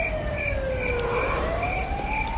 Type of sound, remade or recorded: recorded